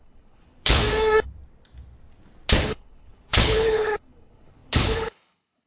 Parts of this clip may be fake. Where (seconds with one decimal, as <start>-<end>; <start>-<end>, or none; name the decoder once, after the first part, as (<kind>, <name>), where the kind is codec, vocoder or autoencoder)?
0.0-0.8 (codec, HILCodec); 2.6-5.7